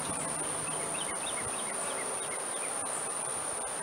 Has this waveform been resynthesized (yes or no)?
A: no